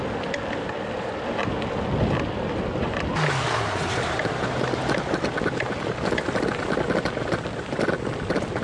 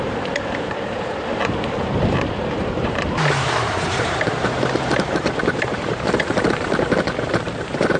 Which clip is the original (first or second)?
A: first